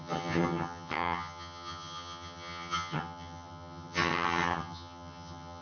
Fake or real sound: fake